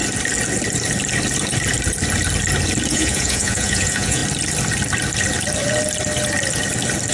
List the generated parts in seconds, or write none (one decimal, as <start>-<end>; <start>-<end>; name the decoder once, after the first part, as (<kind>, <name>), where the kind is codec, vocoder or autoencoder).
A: 2.9-4.2 (vocoder, Vocos)